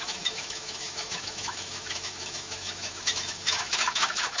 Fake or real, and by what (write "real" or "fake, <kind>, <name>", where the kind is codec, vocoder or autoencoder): fake, autoencoder, DAC-VAE